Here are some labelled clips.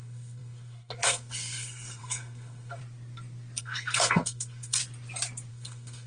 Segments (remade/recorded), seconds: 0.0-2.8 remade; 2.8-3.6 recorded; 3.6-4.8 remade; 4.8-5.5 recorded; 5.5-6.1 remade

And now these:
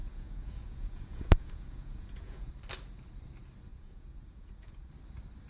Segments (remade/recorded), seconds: 0.0-2.5 remade; 2.5-3.7 recorded; 3.7-4.9 remade; 4.9-5.5 recorded